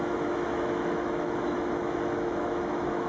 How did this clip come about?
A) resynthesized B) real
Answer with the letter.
A